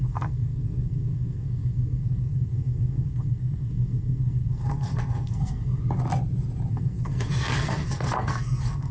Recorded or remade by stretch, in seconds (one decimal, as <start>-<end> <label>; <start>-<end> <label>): 0.0-5.8 remade; 5.8-6.7 recorded; 6.7-8.9 remade